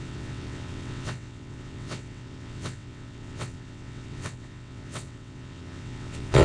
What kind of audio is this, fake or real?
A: fake